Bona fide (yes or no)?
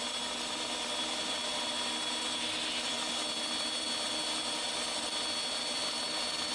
yes